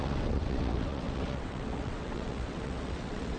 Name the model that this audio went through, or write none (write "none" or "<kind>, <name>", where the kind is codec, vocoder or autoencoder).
vocoder, WaveNeXt